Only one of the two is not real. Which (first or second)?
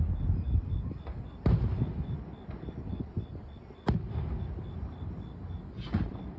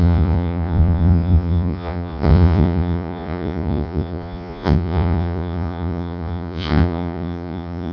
second